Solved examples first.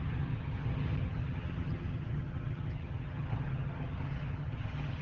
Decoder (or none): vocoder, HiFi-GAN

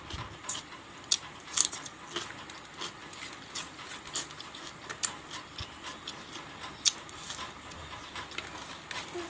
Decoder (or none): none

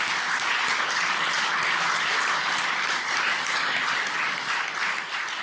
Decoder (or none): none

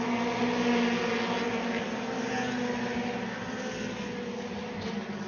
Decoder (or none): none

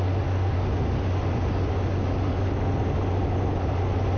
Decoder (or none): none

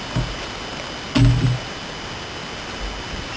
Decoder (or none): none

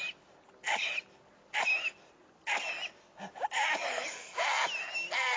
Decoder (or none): none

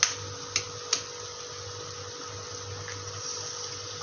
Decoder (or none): none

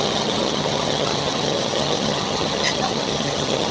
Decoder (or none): vocoder, HiFi-GAN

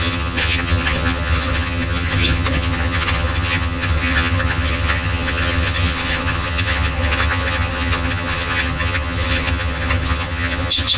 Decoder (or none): vocoder, HiFi-GAN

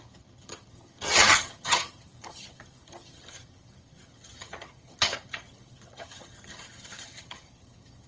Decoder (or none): vocoder, HiFi-GAN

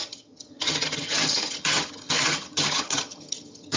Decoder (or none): vocoder, HiFi-GAN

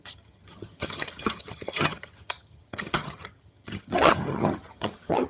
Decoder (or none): vocoder, HiFi-GAN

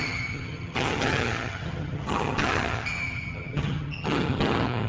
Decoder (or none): vocoder, HiFi-GAN